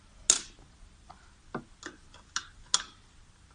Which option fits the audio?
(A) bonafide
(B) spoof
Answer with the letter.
A